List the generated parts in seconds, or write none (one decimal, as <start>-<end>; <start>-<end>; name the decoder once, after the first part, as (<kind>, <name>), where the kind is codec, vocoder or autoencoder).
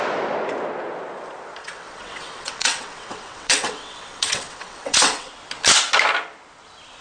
1.6-5.3 (vocoder, WaveNeXt)